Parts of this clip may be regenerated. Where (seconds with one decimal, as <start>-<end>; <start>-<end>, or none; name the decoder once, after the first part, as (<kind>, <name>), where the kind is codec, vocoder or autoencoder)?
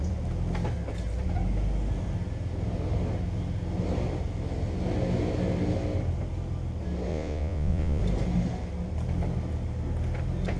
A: 7.1-8.0 (vocoder, Vocos)